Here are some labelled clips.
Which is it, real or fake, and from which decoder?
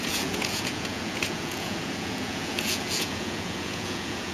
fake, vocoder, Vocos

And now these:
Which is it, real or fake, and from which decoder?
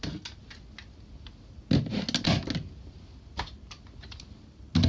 real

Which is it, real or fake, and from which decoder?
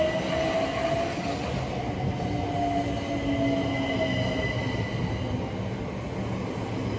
real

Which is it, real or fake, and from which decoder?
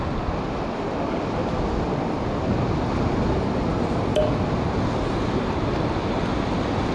real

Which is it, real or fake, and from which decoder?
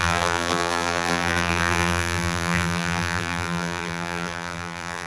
fake, vocoder, BigVGAN v2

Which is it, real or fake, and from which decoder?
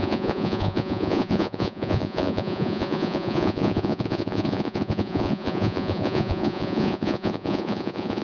fake, vocoder, Vocos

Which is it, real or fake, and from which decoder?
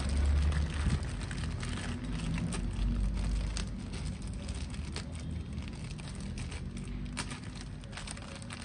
real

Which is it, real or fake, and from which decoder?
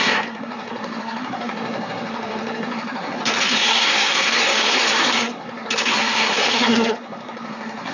fake, codec, SNAC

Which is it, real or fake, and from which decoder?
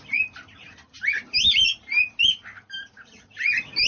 real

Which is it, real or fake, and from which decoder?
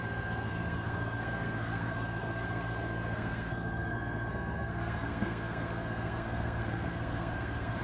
fake, codec, SNAC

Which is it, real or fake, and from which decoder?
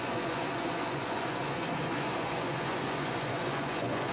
fake, vocoder, Vocos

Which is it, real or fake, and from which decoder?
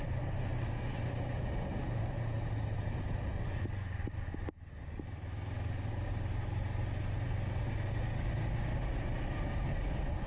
real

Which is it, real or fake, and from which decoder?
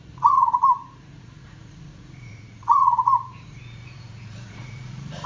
fake, vocoder, Vocos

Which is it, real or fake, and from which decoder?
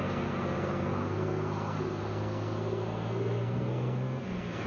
fake, codec, SNAC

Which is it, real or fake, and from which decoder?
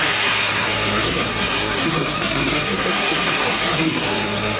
fake, codec, SNAC